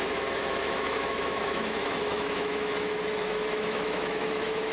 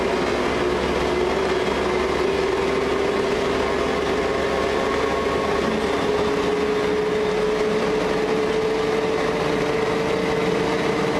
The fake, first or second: first